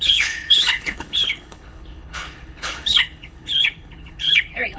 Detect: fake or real fake